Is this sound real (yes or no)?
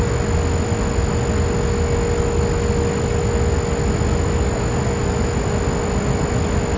yes